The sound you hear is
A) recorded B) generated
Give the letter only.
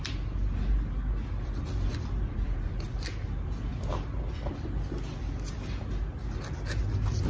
A